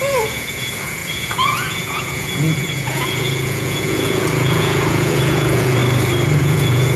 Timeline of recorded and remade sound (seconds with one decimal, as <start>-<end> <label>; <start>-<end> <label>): 0.0-5.8 remade; 5.8-6.4 recorded; 6.4-7.0 remade